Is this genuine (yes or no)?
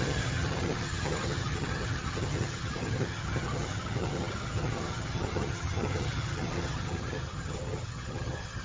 no